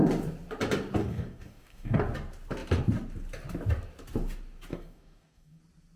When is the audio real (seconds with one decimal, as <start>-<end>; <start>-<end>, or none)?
0.0-1.0; 2.0-4.7; 5.6-6.0